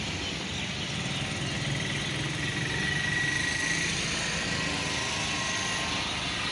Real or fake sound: real